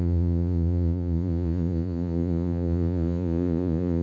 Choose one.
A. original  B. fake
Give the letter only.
B